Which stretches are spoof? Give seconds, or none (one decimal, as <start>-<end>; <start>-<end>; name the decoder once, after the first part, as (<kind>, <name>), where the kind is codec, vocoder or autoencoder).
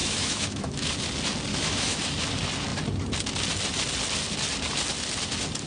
0.0-0.9 (autoencoder, DAC-VAE); 1.5-2.0